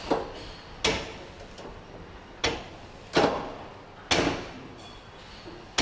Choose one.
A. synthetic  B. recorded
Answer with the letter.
B